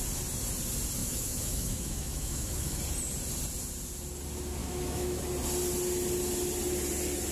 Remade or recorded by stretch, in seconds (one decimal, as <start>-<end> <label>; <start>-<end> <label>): 0.0-1.0 recorded; 1.0-2.8 remade; 2.8-4.6 recorded; 4.6-5.2 remade; 5.2-7.3 recorded